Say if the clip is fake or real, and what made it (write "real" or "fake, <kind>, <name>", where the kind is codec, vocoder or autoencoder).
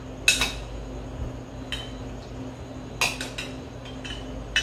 real